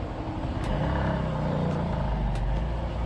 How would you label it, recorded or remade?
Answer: recorded